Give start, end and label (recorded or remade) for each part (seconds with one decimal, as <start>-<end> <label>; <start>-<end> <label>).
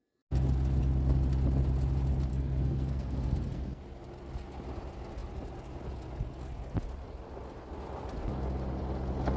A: 0.0-2.3 recorded; 2.3-3.8 remade; 3.8-9.4 recorded